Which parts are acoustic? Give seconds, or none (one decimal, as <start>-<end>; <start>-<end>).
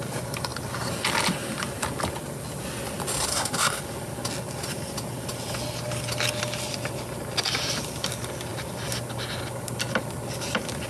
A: 0.0-3.3; 3.8-10.9